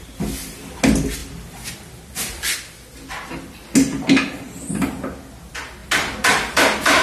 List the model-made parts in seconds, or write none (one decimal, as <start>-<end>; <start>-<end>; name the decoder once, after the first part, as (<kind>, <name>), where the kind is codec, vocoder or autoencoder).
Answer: 5.8-6.6 (vocoder, BigVGAN v2)